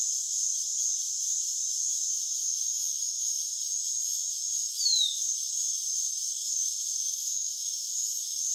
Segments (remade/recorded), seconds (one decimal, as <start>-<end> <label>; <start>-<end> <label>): 0.0-6.4 recorded; 6.4-7.9 remade; 7.9-8.5 recorded